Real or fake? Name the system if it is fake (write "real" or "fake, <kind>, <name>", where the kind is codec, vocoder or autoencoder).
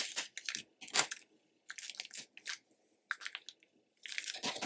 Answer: real